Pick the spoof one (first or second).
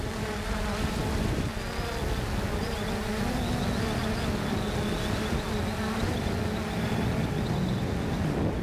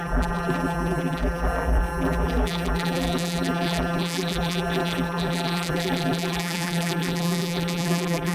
second